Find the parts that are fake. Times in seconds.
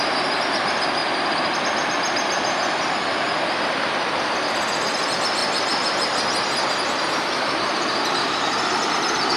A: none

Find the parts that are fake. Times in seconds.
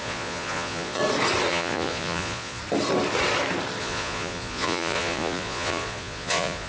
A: 0.0-1.0 (vocoder, Vocos); 1.5-2.6; 3.8-6.7